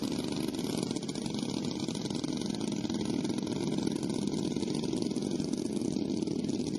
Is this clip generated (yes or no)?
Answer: no